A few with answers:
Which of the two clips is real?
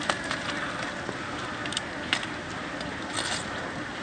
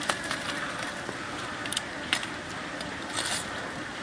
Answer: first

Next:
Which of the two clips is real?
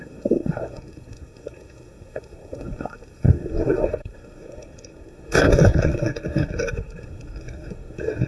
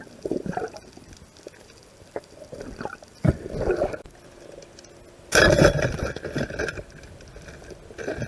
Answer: second